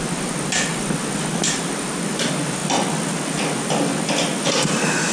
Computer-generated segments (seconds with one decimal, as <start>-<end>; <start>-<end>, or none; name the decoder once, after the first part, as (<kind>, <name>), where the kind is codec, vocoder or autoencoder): none

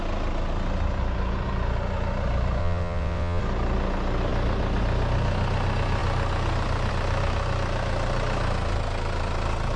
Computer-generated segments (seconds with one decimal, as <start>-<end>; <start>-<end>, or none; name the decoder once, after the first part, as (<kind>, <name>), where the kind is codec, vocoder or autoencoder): 2.6-3.4 (vocoder, WaveNeXt)

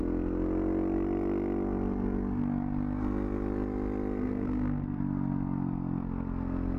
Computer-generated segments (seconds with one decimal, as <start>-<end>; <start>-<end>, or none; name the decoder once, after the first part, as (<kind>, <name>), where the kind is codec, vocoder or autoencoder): 4.2-5.0 (codec, SNAC)

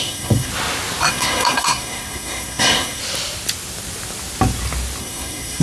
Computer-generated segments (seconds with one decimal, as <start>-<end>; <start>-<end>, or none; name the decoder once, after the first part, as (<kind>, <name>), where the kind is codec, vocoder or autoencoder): 0.0-0.5 (codec, SNAC); 1.1-3.0; 5.0-5.6

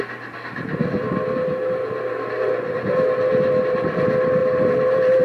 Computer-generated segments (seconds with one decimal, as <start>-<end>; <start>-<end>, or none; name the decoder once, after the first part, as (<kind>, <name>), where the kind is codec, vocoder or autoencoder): 4.4-5.2 (vocoder, BigVGAN v2)